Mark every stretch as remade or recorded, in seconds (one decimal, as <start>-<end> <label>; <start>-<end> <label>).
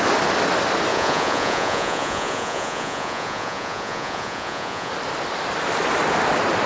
0.0-0.9 recorded; 0.9-4.9 remade; 4.9-6.7 recorded